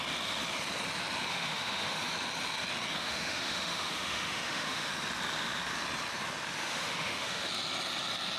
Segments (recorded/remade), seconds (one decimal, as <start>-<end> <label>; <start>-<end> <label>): 0.0-1.3 recorded; 1.3-2.1 remade; 2.1-3.0 recorded; 3.0-4.9 remade; 4.9-6.6 recorded; 6.6-7.5 remade; 7.5-8.4 recorded

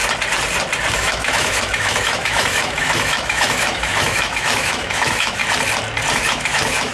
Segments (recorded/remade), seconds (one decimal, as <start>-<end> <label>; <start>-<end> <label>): 0.0-0.9 recorded; 0.9-5.4 remade; 5.4-6.1 recorded; 6.1-6.9 remade

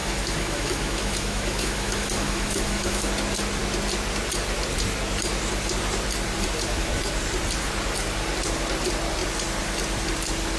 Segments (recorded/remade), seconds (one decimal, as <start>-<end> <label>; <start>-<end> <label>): 0.0-3.1 remade; 3.1-10.6 recorded